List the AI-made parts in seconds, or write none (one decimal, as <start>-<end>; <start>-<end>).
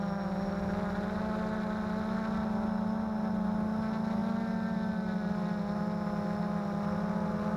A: none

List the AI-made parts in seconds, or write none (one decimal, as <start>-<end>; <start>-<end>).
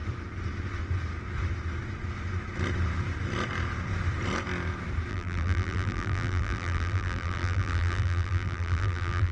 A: 5.1-9.3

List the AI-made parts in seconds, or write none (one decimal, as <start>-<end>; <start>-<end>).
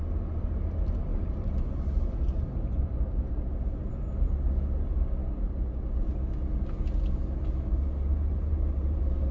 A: 1.1-3.9; 8.1-9.3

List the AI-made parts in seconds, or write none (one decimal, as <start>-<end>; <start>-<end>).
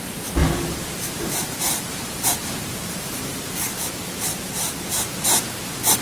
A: 0.4-3.4; 4.3-5.1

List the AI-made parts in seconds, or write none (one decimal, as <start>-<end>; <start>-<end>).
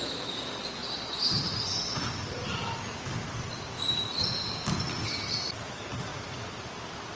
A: none